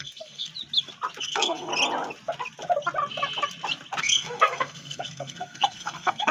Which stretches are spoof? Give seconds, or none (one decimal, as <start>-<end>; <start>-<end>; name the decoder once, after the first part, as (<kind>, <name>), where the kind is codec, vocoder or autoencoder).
0.0-0.5 (codec, SNAC); 1.2-1.7; 4.0-6.3